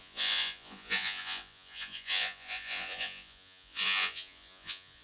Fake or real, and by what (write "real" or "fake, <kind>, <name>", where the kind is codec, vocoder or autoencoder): fake, vocoder, Vocos